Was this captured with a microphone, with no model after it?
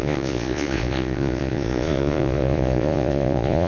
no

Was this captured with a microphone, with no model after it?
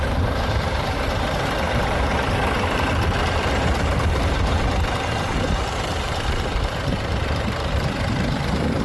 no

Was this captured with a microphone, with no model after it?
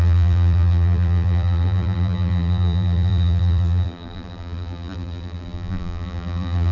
no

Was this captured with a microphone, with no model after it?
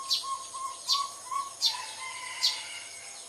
yes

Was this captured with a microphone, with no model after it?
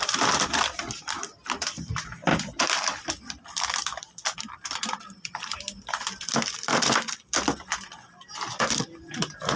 no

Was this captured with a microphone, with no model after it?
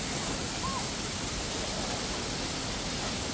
yes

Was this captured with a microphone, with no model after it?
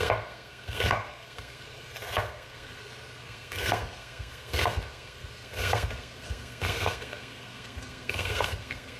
no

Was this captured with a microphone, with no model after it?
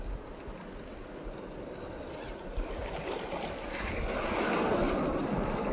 yes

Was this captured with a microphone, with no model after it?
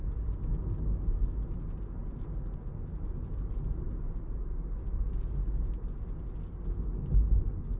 yes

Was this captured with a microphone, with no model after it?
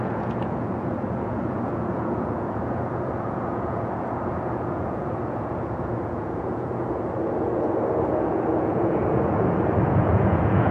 no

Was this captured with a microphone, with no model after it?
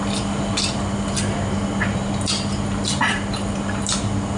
yes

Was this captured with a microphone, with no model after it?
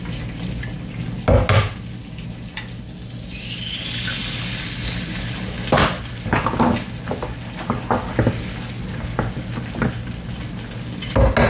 yes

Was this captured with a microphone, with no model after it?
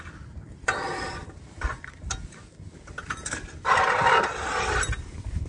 yes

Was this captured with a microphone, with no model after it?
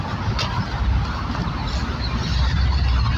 yes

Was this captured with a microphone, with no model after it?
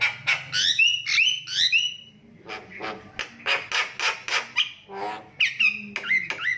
yes